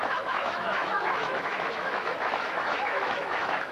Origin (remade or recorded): remade